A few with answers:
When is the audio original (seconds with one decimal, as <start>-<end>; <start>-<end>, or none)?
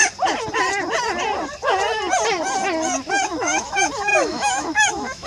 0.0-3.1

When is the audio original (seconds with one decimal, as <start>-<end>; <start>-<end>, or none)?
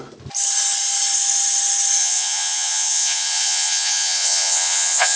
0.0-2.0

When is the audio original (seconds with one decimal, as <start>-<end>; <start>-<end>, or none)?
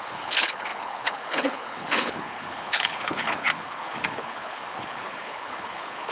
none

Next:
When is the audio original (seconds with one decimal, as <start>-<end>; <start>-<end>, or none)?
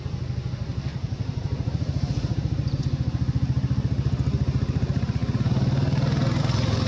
0.0-0.9; 2.8-6.9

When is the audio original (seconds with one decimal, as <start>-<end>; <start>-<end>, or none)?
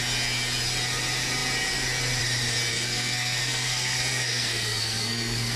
0.0-2.7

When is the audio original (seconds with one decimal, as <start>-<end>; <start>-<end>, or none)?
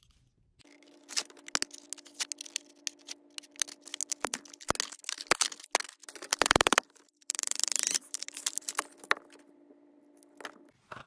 0.0-6.0; 8.7-11.1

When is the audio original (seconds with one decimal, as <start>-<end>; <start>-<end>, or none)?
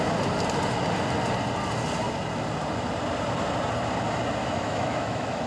0.0-4.4